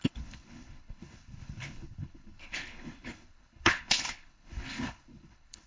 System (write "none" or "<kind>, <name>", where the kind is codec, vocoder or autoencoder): codec, HILCodec